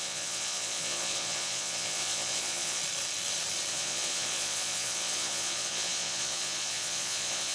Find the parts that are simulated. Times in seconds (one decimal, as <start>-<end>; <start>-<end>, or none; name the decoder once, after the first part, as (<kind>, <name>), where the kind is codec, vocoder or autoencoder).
0.0-2.8 (vocoder, Vocos); 3.7-7.5